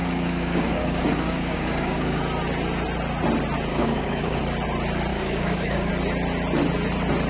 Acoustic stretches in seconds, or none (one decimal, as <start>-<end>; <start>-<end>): 2.2-3.7; 4.4-5.1; 5.9-7.3